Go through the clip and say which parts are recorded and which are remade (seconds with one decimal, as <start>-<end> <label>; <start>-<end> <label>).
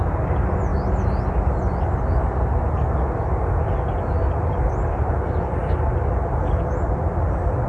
0.0-7.7 recorded